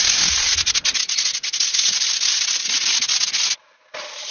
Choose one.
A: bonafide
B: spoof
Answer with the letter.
A